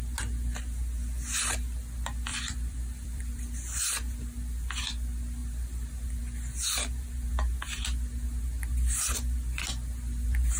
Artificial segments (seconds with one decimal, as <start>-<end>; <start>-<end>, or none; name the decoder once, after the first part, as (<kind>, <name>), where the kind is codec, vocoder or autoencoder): 2.3-3.4 (vocoder, BigVGAN v2)